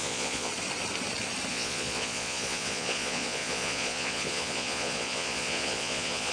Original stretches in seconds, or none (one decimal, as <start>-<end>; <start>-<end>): 0.5-1.5